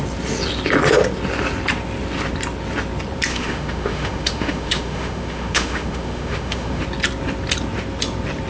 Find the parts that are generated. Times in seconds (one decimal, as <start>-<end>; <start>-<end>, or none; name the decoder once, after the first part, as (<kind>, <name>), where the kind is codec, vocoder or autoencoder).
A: 3.3-6.8 (autoencoder, DAC-VAE)